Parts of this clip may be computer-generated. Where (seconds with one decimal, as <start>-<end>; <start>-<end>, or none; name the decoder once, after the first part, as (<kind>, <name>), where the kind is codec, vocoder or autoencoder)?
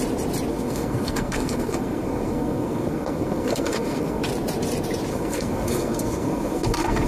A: 0.5-4.2 (codec, SNAC); 5.1-7.1